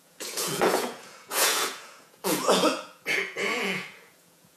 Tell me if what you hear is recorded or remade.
remade